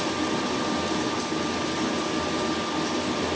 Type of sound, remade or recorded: recorded